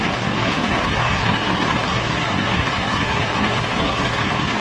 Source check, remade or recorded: remade